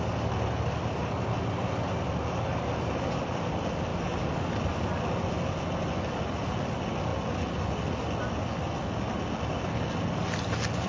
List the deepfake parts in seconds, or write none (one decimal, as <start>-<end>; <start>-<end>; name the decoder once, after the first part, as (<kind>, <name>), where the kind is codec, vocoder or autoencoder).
none